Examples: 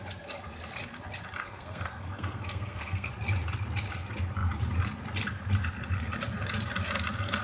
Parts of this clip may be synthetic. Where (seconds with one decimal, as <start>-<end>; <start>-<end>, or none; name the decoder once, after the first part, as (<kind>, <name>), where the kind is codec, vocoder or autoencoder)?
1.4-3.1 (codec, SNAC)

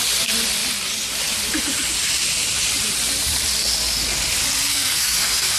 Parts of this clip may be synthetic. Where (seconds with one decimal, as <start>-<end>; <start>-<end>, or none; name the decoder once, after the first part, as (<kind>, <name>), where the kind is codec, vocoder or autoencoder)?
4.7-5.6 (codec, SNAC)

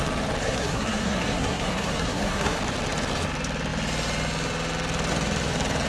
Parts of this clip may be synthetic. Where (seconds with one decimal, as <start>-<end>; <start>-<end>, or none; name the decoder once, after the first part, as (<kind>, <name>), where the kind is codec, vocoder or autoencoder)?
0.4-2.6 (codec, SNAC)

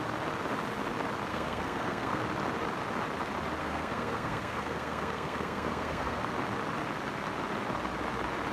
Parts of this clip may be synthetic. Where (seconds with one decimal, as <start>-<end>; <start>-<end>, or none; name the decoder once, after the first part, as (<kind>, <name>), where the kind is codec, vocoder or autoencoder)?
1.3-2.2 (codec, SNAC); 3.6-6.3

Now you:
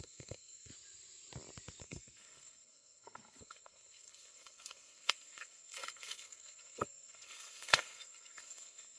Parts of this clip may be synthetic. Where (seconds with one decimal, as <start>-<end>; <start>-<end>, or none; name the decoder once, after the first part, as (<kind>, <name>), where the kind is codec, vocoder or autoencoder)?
0.0-0.7 (codec, SNAC); 1.8-9.0

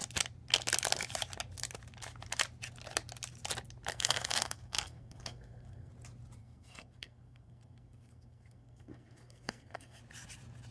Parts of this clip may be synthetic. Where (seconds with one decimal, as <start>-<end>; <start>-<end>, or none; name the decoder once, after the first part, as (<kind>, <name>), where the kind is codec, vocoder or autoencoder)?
3.9-5.9 (codec, SNAC); 6.4-10.0

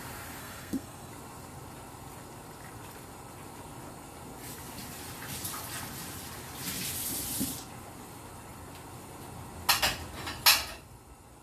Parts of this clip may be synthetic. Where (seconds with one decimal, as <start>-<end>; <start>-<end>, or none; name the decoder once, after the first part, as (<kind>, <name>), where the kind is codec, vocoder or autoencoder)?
0.4-1.1 (codec, SNAC)

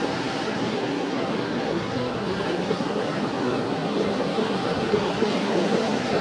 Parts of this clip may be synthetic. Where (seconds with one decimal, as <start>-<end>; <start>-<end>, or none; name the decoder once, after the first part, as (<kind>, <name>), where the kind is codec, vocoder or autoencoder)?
0.0-6.2 (codec, SNAC)